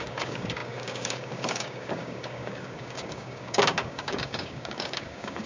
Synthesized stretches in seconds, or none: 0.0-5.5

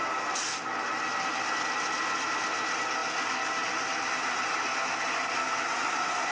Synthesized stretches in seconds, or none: none

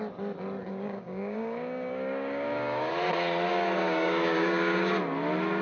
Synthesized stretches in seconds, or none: 0.7-2.9; 3.5-4.9